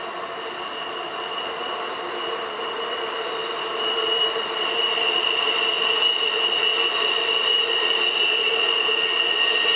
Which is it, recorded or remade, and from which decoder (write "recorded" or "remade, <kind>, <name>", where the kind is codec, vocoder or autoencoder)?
recorded